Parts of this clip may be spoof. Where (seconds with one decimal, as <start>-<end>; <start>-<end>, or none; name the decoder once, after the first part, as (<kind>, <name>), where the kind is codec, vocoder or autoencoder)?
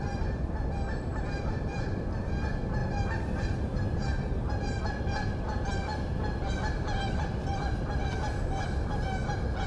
1.1-2.2 (vocoder, BigVGAN v2); 6.4-7.7